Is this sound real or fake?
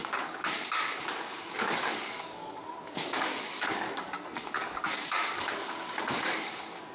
fake